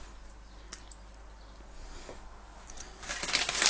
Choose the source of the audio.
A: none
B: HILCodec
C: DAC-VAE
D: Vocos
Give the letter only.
A